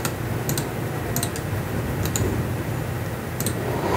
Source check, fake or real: real